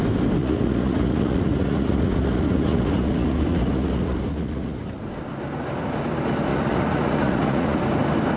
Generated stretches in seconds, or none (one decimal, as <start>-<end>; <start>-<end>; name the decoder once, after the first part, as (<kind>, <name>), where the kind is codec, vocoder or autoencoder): 0.4-5.0 (vocoder, Vocos); 6.5-7.8